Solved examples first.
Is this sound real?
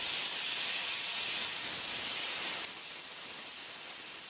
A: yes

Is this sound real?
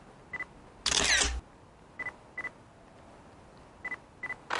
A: yes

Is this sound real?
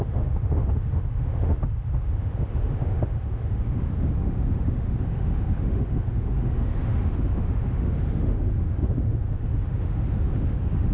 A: no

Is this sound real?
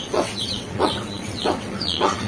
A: no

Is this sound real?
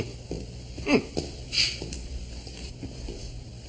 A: yes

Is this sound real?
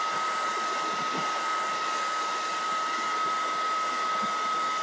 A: yes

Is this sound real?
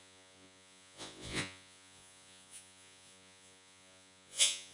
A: no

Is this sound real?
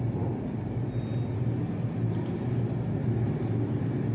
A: yes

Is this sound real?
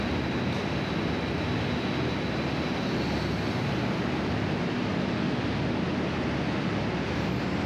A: yes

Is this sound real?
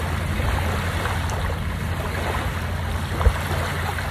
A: yes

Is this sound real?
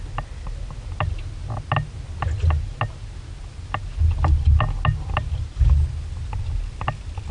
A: yes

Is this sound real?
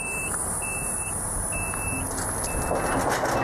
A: yes